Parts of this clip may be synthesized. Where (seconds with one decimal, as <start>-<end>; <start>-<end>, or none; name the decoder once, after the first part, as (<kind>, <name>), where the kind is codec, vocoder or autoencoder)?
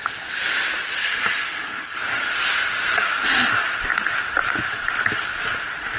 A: 1.0-2.0 (codec, HILCodec)